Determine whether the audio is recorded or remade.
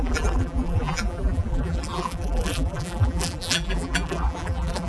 remade